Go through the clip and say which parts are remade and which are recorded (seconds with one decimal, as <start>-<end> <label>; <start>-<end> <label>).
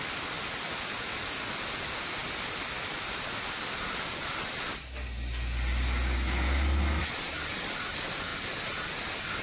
0.0-9.4 recorded